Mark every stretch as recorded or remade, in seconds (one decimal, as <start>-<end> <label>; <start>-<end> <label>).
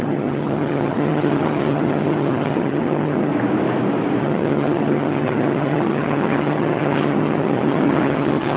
0.0-3.3 remade; 3.3-4.2 recorded; 4.2-8.6 remade